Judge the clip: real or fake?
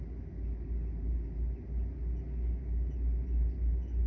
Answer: real